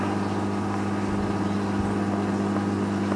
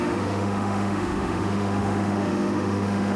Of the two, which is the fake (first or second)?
second